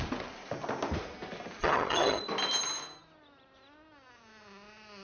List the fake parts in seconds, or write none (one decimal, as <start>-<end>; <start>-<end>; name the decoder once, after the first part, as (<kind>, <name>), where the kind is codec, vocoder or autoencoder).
1.6-2.2 (vocoder, HiFi-GAN)